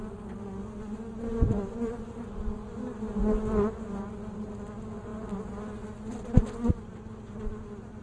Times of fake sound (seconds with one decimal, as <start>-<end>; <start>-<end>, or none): 1.3-2.6